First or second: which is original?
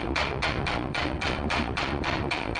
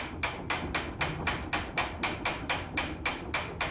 second